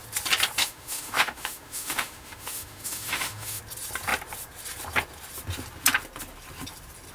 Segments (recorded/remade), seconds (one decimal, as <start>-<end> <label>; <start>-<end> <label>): 0.0-0.6 recorded; 0.6-3.6 remade; 3.6-7.1 recorded

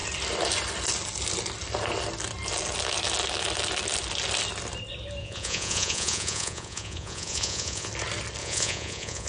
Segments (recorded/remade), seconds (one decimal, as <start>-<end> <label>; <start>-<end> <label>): 0.0-5.2 recorded; 5.2-7.9 remade; 7.9-8.4 recorded; 8.4-9.3 remade

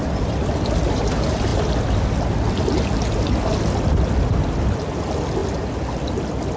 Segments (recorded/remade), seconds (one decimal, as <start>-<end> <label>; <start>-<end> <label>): 0.0-6.6 recorded

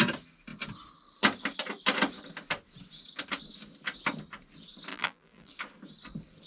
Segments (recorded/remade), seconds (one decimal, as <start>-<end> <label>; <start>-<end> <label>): 0.0-4.9 recorded; 4.9-5.5 remade; 5.5-6.5 recorded

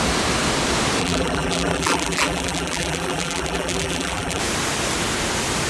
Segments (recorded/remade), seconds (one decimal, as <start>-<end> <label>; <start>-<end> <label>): 0.0-1.0 recorded; 1.0-4.4 remade; 4.4-5.7 recorded